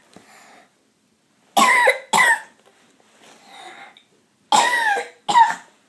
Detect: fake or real real